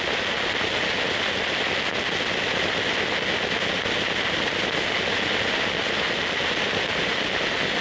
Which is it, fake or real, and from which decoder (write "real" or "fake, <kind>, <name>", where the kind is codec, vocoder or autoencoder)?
real